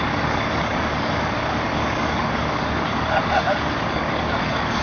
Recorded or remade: remade